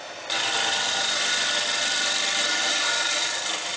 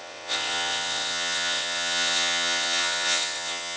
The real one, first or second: first